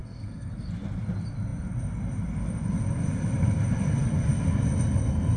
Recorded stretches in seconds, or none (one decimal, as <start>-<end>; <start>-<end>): 0.5-5.4